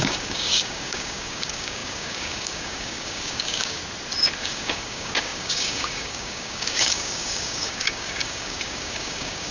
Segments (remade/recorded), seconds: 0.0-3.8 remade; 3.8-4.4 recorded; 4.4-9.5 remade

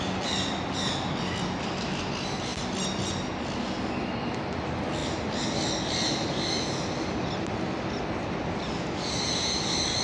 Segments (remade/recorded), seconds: 0.0-10.0 recorded

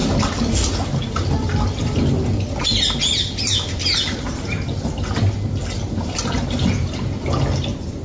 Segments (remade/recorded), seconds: 0.0-8.0 recorded

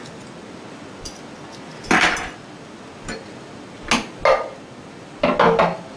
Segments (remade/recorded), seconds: 0.0-6.0 recorded